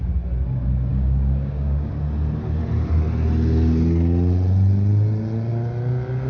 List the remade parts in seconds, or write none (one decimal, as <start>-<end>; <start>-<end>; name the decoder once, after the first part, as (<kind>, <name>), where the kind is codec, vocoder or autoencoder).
0.9-1.9 (codec, DAC)